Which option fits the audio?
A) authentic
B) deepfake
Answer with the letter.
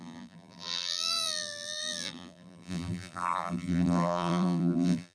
B